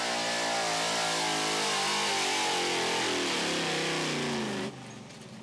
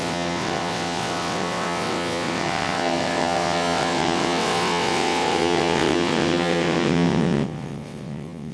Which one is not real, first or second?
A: second